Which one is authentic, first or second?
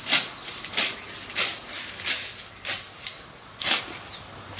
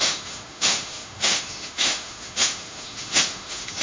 first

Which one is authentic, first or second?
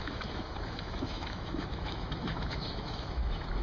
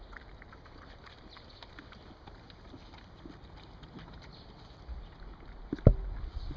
second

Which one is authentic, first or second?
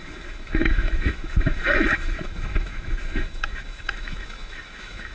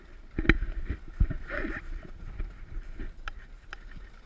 second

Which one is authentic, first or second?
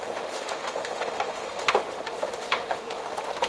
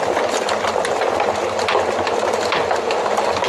second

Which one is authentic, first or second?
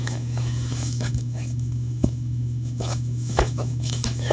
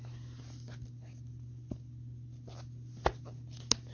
second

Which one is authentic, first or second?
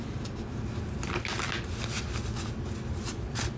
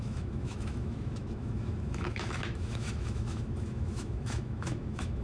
first